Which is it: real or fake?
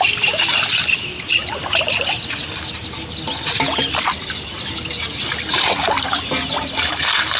real